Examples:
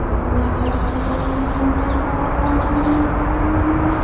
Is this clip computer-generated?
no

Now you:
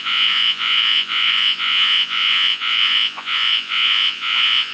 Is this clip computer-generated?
yes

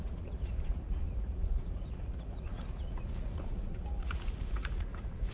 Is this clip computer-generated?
yes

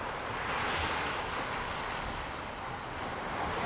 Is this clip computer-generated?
no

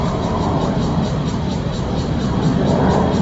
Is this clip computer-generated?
yes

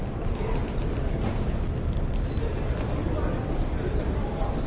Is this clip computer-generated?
no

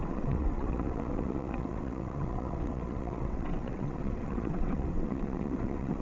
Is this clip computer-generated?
yes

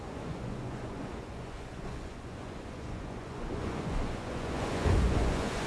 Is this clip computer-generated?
yes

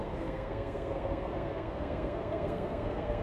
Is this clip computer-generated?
yes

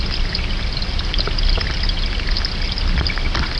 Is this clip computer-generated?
no